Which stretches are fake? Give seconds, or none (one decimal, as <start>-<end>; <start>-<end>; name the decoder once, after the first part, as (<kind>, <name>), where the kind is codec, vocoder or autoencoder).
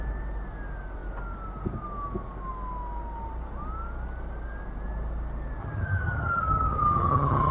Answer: 5.6-7.5 (vocoder, HiFi-GAN)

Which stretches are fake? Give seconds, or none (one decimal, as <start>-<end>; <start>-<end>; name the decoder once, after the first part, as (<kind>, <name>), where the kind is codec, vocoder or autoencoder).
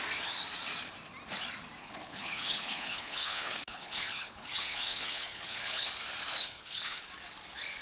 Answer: 1.8-5.9 (codec, HILCodec); 6.4-7.1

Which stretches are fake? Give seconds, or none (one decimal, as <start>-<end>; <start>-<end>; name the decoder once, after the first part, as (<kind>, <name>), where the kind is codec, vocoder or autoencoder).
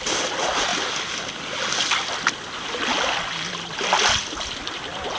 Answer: none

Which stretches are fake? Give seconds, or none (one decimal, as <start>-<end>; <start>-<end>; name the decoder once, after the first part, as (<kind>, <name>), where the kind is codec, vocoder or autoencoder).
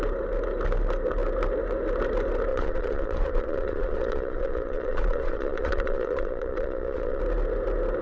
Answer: 2.5-7.2 (vocoder, Vocos)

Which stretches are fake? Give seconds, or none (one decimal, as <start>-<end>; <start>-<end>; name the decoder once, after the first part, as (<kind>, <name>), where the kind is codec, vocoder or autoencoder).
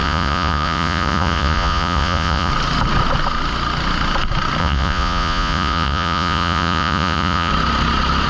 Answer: 0.0-2.5 (vocoder, Vocos); 4.6-7.5